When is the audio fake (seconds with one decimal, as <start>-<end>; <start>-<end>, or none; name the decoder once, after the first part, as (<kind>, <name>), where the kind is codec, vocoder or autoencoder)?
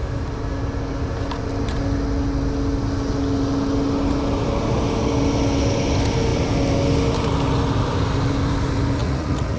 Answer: 9.0-9.6 (vocoder, Vocos)